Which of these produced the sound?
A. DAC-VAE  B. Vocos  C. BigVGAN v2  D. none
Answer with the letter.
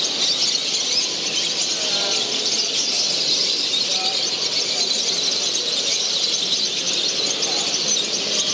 D